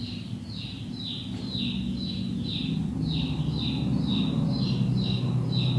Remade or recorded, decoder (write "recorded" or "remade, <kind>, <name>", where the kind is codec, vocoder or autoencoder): recorded